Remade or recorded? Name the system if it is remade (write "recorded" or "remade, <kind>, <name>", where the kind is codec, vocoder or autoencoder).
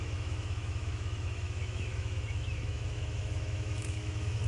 remade, autoencoder, DAC-VAE